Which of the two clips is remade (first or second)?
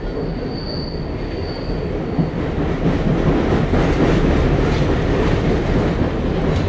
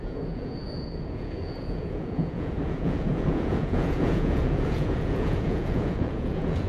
second